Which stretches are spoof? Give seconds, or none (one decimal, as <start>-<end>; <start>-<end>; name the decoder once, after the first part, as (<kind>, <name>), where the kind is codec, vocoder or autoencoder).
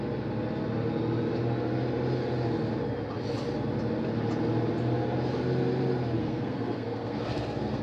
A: 6.2-7.8 (codec, SNAC)